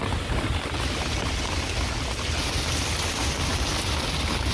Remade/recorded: recorded